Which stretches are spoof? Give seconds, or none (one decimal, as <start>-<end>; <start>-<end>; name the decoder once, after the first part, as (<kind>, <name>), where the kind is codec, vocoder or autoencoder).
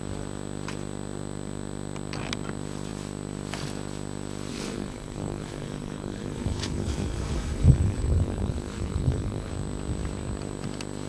4.5-9.5 (codec, SNAC)